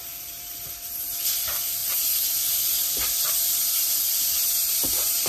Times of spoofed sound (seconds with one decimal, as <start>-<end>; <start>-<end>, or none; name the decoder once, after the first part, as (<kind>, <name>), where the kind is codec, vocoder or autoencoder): 0.0-1.3 (vocoder, BigVGAN v2); 1.8-5.3